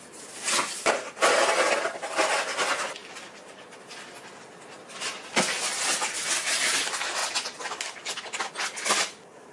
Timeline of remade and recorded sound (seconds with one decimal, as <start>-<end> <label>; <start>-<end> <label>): 0.0-9.5 recorded